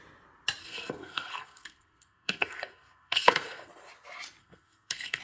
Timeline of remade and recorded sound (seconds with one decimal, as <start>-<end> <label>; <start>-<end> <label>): 0.0-0.6 recorded; 0.6-3.7 remade; 3.7-4.4 recorded; 4.4-5.2 remade